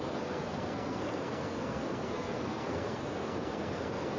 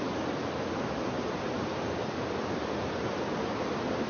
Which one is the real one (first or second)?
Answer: second